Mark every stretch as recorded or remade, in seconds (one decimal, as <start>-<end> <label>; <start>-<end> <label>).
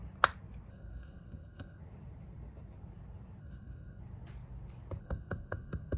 0.0-0.7 recorded; 0.7-1.8 remade; 1.8-3.4 recorded; 3.4-4.0 remade; 4.0-5.0 recorded; 5.0-6.0 remade